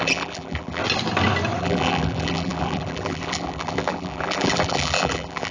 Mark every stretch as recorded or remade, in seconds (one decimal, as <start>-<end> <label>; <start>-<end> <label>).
0.0-0.8 remade; 0.8-1.6 recorded; 1.6-5.5 remade